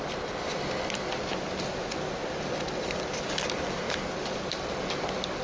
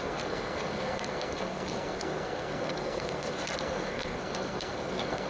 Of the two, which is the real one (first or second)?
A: first